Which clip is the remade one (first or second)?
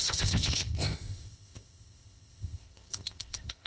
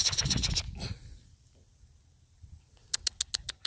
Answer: first